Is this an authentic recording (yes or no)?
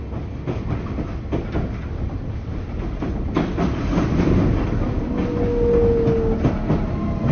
yes